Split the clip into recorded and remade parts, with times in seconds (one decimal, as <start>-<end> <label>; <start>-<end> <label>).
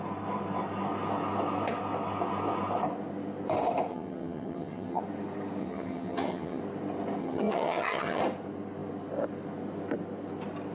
0.0-3.9 recorded; 3.9-5.0 remade; 5.0-5.6 recorded; 5.6-6.6 remade; 6.6-7.2 recorded; 7.2-8.2 remade; 8.2-10.7 recorded